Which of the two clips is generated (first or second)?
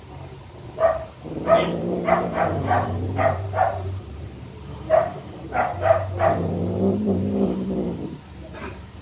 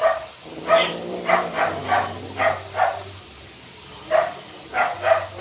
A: first